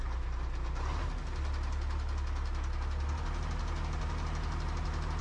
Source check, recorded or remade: recorded